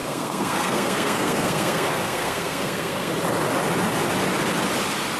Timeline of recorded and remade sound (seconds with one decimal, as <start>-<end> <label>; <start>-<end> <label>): 0.0-3.1 remade; 3.1-5.2 recorded